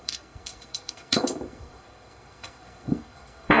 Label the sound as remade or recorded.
remade